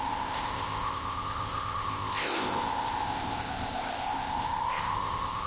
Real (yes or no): no